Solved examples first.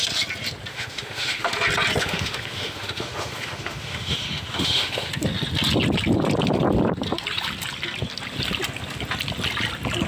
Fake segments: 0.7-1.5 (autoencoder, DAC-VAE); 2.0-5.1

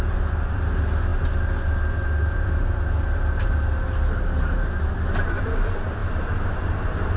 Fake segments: none

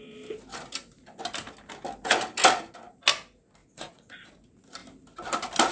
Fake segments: 3.6-4.3 (vocoder, Vocos)

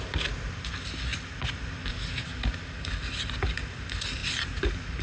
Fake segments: none